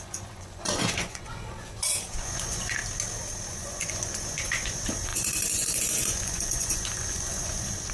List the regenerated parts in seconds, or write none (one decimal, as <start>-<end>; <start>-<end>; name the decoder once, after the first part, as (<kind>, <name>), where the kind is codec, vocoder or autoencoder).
0.0-2.8 (vocoder, Vocos); 3.5-7.9